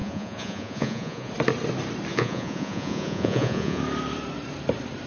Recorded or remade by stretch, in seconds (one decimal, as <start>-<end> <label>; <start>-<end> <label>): 0.0-1.3 remade; 1.3-2.1 recorded; 2.1-3.8 remade; 3.8-5.1 recorded